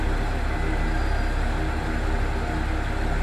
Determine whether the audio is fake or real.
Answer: real